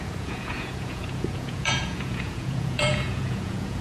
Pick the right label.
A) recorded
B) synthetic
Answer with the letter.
B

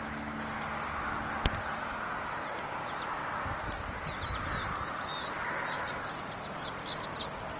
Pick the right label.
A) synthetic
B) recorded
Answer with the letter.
B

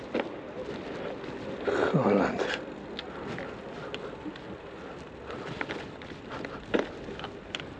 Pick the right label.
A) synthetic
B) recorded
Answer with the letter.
B